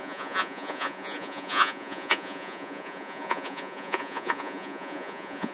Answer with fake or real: fake